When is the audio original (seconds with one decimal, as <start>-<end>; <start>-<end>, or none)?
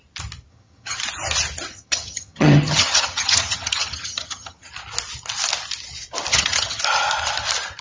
0.0-0.5; 1.0-1.7; 4.7-6.3; 6.8-7.8